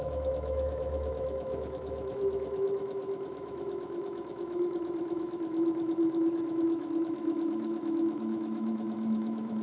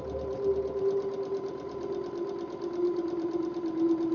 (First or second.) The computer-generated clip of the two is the first